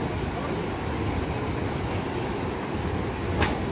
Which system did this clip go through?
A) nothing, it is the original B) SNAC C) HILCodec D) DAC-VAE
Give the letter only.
A